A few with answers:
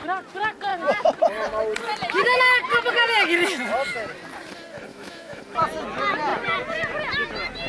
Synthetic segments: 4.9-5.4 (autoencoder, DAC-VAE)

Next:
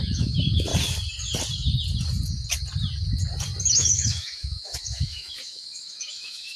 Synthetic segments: 0.0-0.7 (autoencoder, DAC-VAE); 3.7-6.6

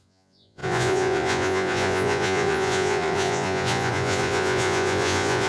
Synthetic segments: 0.0-5.5 (vocoder, Vocos)

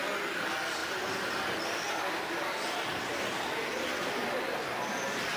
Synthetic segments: none

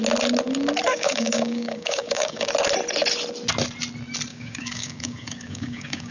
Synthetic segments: 0.9-2.5 (codec, DAC); 4.3-6.1

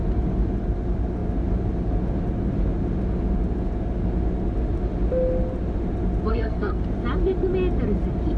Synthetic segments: 6.3-6.8 (codec, SNAC)